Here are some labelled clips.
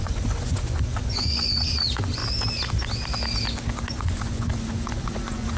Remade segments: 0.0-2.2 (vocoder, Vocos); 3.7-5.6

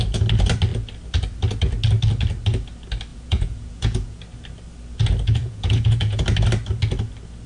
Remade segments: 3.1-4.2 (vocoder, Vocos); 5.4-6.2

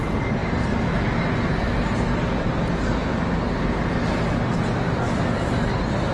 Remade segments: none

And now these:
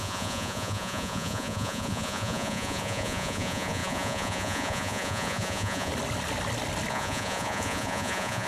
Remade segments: 0.0-5.9 (vocoder, Vocos); 6.9-8.5

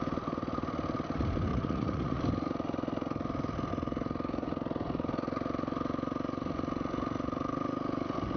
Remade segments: 1.5-2.2 (vocoder, Vocos)

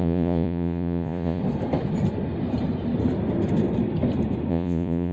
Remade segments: 0.0-1.4 (vocoder, Vocos); 4.5-5.1

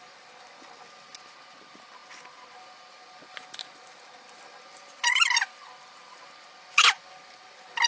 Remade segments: none

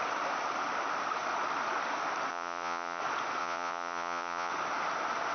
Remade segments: 2.3-3.0 (vocoder, Vocos); 3.4-4.5